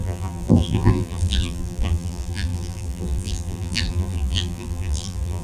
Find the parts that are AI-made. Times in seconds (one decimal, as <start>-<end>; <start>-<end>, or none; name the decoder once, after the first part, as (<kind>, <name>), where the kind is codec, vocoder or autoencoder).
0.0-5.4 (vocoder, BigVGAN v2)